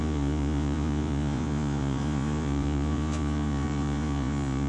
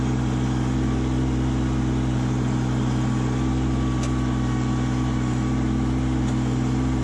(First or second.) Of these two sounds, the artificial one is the first